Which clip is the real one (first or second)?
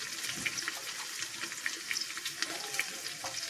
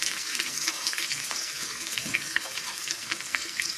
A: first